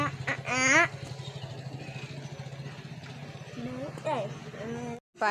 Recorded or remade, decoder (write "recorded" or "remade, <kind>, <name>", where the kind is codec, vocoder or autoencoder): recorded